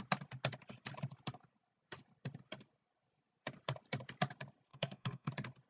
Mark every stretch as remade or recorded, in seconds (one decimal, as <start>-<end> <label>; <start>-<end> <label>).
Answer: 0.0-4.7 recorded; 4.7-5.3 remade; 5.3-5.7 recorded